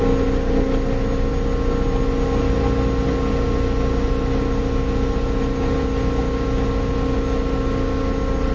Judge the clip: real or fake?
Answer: real